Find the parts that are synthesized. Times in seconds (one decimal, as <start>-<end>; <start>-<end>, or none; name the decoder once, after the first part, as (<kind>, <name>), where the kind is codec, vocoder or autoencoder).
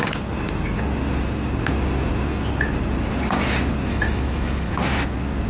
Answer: 3.9-4.7 (autoencoder, DAC-VAE)